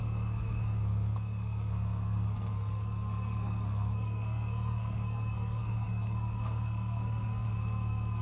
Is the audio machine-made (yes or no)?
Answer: yes